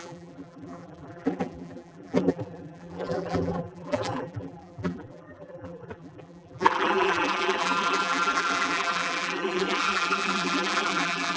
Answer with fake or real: fake